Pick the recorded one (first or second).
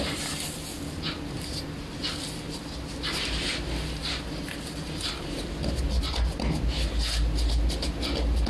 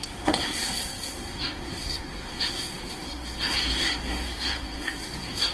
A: first